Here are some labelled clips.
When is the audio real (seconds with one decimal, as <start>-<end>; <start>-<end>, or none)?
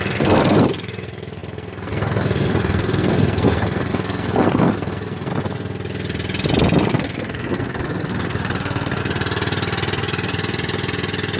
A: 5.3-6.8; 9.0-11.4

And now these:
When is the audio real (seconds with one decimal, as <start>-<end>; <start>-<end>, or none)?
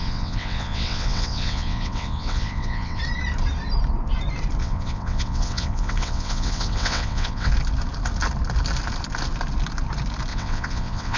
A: 3.0-4.6; 7.5-10.3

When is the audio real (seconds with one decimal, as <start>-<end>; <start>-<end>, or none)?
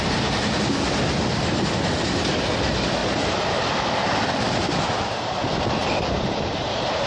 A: 0.0-3.0; 3.9-5.8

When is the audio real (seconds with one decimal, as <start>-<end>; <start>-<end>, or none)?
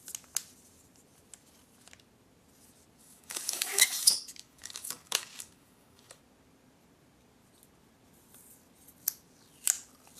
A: 0.0-3.0; 6.2-10.2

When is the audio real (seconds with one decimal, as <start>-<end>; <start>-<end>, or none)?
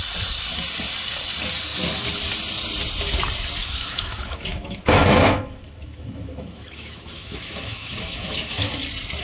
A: 0.0-3.6; 8.7-9.2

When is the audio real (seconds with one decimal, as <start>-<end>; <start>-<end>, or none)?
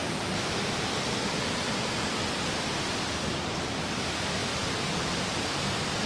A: 0.0-6.1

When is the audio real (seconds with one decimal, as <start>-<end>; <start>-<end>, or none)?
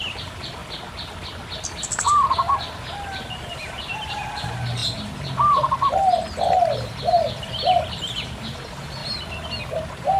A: 0.6-3.3; 4.8-7.8; 9.0-9.6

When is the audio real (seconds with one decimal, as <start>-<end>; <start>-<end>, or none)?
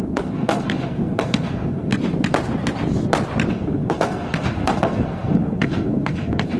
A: 1.9-3.5